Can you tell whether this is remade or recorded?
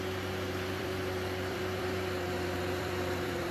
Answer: remade